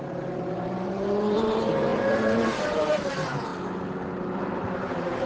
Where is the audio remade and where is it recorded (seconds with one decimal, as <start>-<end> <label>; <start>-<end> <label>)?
0.0-3.5 remade; 3.5-4.6 recorded; 4.6-5.3 remade